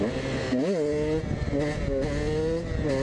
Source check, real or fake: real